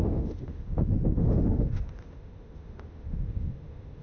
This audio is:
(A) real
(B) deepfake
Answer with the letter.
B